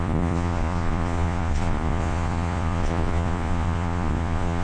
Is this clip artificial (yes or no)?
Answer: yes